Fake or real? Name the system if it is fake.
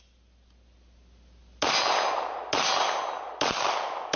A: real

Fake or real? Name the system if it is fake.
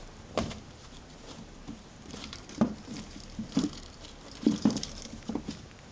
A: fake, vocoder, BigVGAN v2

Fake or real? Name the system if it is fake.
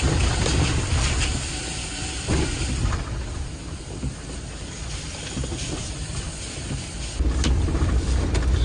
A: real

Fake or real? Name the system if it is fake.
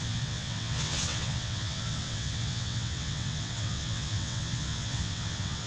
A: fake, vocoder, WaveNeXt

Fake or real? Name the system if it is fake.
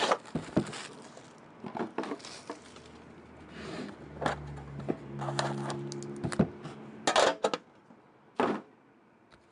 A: real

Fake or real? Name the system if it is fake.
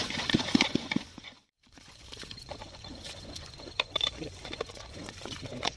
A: fake, vocoder, Vocos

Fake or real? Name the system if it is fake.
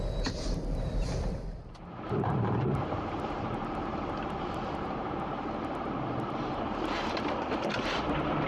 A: fake, vocoder, BigVGAN v2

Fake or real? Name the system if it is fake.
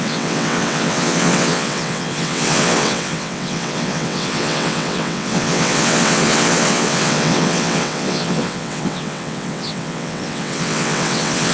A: fake, vocoder, WaveNeXt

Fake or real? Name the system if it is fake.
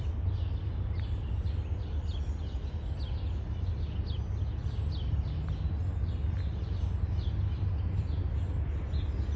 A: real